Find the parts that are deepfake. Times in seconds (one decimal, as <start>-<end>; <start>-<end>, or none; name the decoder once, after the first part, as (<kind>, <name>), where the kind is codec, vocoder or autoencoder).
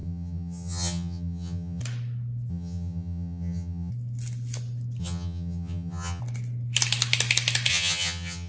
0.0-1.8 (vocoder, HiFi-GAN); 2.5-3.9; 5.0-6.2; 7.7-8.5